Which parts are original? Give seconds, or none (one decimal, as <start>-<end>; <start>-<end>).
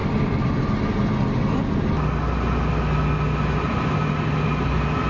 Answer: 0.0-5.1